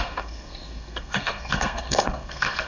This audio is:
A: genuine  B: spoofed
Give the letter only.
B